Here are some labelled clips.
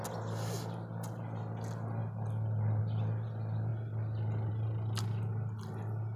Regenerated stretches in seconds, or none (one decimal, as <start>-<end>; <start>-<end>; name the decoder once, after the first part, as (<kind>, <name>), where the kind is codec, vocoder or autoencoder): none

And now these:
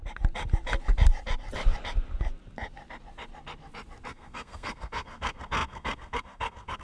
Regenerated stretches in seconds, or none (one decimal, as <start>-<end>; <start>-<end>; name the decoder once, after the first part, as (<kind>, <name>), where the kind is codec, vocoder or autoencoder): 4.1-6.8 (codec, SNAC)

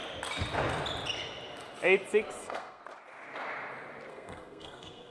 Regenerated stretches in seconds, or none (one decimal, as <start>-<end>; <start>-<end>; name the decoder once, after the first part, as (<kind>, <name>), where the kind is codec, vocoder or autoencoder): 2.4-2.8 (codec, SNAC); 4.1-5.1

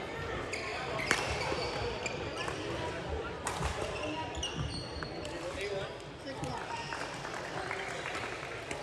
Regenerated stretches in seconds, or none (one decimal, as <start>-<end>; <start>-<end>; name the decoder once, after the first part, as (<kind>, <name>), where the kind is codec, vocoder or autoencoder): none